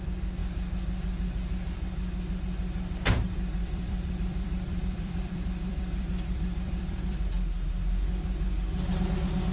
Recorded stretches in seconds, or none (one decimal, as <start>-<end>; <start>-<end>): 0.0-3.6; 7.3-9.5